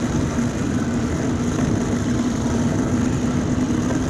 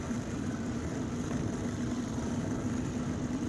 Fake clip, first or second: second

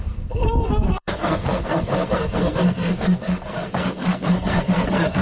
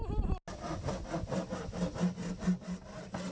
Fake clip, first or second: first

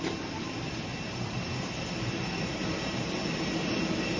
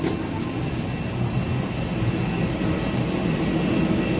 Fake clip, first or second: first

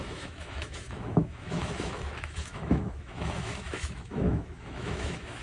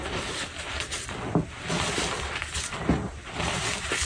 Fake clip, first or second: first